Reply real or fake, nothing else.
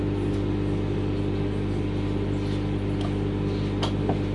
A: real